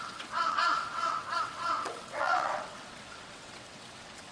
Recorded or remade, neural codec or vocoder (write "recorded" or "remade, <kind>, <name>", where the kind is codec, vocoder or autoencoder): remade, vocoder, WaveNeXt